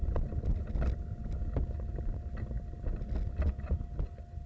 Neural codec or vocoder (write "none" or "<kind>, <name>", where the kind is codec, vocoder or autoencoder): none